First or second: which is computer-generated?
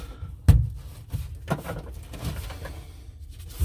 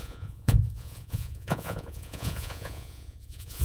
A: second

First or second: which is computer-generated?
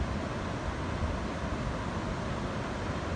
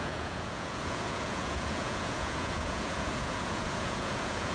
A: second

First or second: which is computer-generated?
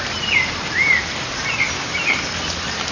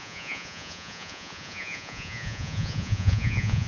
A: second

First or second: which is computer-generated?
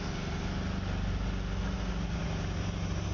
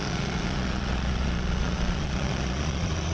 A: second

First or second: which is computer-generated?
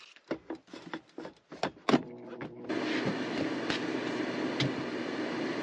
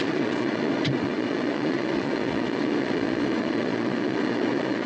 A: second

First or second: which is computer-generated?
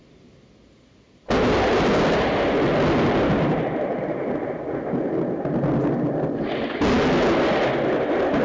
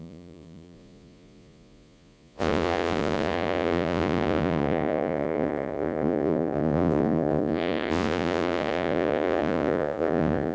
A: second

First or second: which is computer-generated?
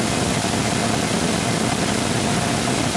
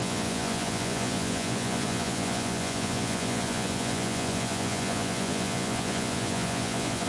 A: second